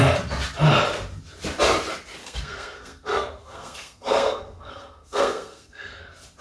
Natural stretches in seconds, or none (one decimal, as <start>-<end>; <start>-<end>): 0.0-2.2; 6.0-6.4